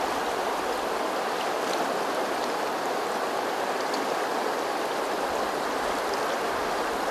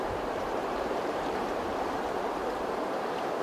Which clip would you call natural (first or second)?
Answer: first